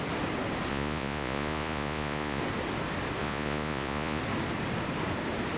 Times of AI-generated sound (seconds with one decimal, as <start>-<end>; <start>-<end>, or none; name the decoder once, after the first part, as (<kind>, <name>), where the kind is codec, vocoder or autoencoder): 0.7-2.4 (vocoder, Vocos); 3.2-4.2